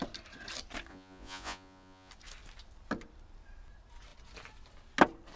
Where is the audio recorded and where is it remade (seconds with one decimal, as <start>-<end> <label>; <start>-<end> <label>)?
0.0-0.9 recorded; 0.9-2.1 remade; 2.1-5.4 recorded